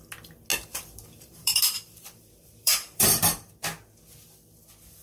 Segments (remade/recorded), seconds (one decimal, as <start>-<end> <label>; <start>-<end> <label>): 0.0-0.5 recorded; 0.5-3.5 remade; 3.5-5.0 recorded